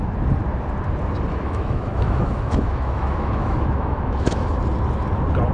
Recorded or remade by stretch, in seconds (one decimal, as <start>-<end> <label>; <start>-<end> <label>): 0.0-1.3 recorded; 1.3-4.6 remade; 4.6-5.5 recorded